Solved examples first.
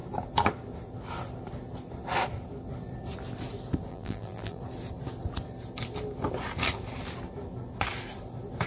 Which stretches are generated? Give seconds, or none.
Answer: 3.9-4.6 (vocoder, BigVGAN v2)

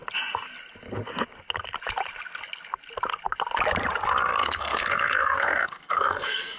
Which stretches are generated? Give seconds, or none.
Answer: 4.4-6.6 (codec, SNAC)

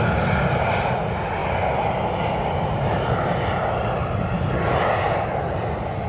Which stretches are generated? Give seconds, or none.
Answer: 4.0-4.5 (vocoder, BigVGAN v2)